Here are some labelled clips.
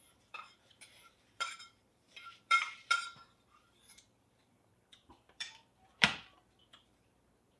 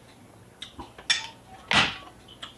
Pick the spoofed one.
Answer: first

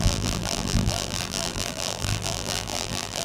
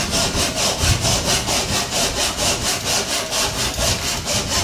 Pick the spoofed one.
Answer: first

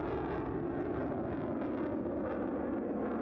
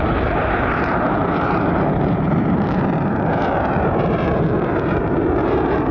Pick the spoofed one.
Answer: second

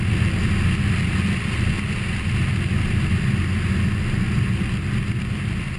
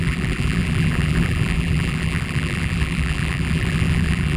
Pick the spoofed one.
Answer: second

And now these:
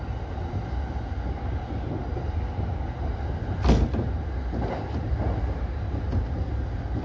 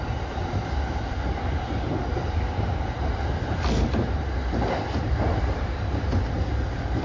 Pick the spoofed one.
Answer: second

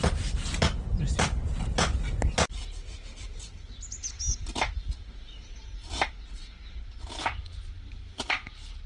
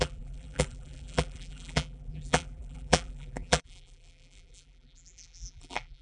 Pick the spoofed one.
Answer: second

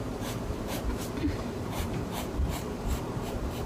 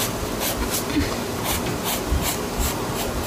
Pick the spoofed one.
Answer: first